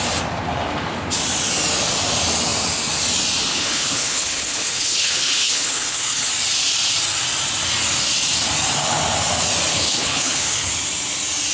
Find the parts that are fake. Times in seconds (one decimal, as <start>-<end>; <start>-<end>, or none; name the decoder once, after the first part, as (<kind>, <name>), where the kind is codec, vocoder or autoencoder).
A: 3.5-6.3 (codec, HILCodec); 9.7-10.7